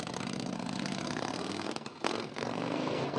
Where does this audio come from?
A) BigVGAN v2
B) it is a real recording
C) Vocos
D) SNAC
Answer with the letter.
D